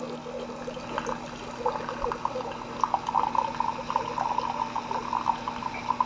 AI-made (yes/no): no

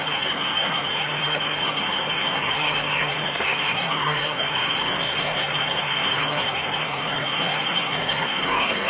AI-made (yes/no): yes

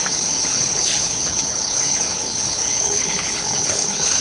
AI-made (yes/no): yes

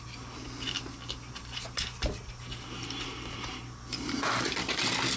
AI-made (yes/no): no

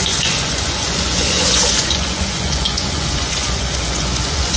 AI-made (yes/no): yes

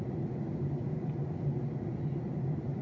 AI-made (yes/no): no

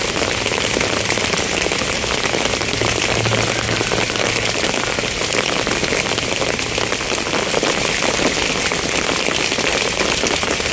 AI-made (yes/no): no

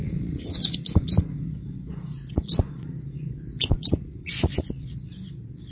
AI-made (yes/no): yes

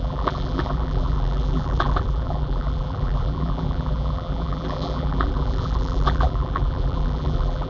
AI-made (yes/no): yes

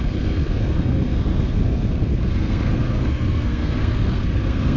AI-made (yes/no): yes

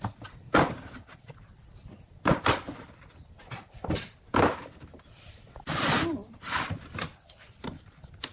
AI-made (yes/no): no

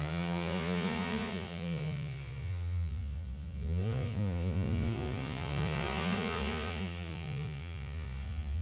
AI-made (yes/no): yes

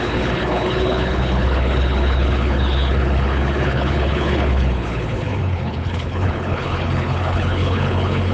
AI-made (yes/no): yes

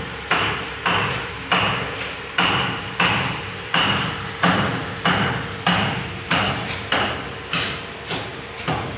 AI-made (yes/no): yes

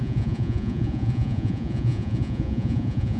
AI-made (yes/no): yes